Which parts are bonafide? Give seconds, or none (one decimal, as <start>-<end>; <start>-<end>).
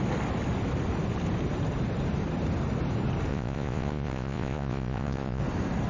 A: 0.0-3.3; 5.4-5.9